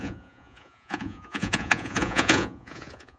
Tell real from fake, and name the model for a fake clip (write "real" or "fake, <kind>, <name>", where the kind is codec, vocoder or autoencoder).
fake, vocoder, Vocos